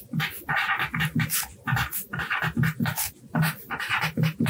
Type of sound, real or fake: real